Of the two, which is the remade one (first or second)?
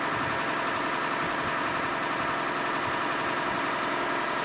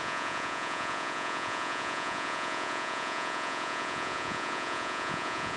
second